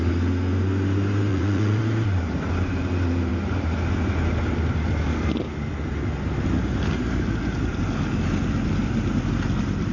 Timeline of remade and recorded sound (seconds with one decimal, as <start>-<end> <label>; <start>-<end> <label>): 0.0-1.3 recorded; 1.3-1.8 remade; 1.8-9.9 recorded